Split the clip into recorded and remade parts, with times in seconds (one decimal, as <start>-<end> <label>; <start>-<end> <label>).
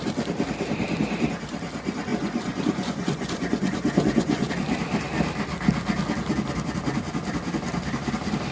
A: 0.0-2.1 recorded; 2.1-4.5 remade; 4.5-8.5 recorded